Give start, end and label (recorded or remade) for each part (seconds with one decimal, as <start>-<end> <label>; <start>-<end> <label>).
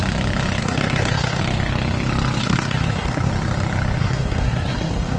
0.0-0.6 recorded; 0.6-1.4 remade; 1.4-2.4 recorded; 2.4-3.3 remade; 3.3-4.0 recorded; 4.0-5.2 remade